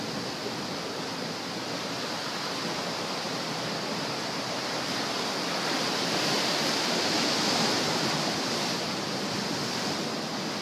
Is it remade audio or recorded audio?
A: recorded